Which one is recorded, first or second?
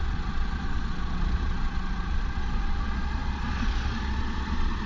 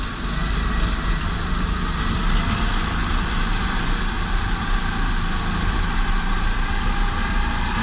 second